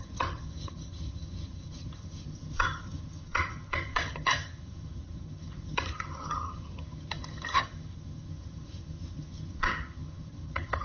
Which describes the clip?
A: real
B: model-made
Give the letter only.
B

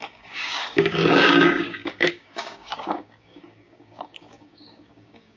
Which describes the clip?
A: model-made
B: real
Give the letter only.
A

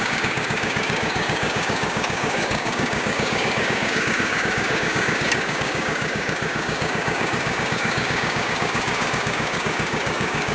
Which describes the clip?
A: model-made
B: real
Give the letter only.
A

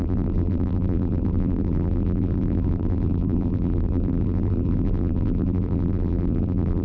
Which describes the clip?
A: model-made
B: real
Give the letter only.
A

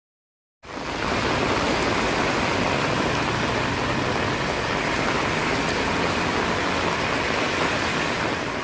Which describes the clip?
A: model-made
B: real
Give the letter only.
B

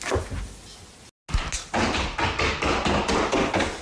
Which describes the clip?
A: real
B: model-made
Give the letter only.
A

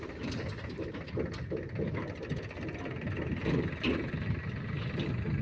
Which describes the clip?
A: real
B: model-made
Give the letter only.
A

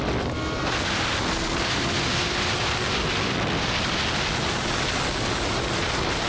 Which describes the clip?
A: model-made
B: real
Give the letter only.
B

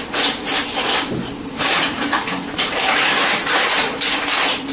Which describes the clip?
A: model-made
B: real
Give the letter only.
A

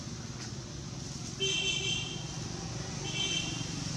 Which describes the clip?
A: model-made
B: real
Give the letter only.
B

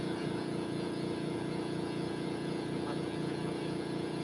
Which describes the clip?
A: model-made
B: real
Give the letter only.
A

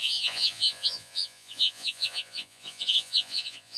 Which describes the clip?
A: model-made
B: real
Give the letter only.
A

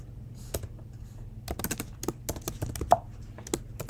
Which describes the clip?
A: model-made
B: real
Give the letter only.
B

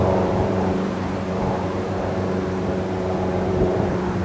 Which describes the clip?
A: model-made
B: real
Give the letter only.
A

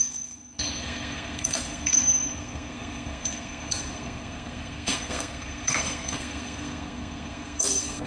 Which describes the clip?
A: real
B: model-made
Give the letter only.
B